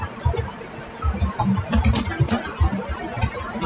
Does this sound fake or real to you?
real